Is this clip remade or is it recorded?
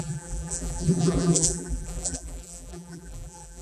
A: remade